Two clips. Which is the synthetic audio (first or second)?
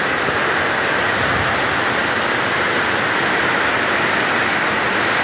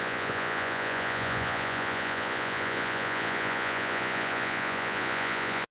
second